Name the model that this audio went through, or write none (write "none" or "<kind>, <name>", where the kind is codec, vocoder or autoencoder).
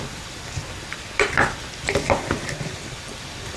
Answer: vocoder, BigVGAN v2